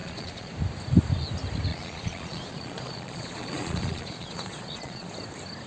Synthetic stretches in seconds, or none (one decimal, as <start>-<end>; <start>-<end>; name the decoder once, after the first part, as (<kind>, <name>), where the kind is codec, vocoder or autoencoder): 0.0-0.5 (vocoder, Vocos); 1.7-5.1